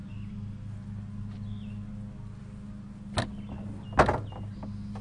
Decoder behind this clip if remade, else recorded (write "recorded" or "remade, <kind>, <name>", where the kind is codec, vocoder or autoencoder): recorded